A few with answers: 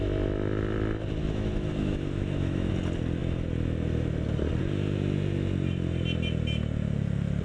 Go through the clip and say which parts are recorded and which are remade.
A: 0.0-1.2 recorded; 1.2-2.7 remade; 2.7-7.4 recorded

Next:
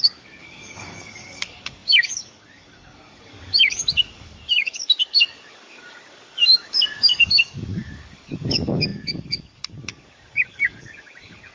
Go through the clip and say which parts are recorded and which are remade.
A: 0.0-11.5 remade

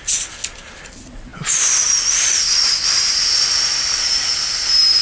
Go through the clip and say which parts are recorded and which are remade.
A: 0.0-5.0 recorded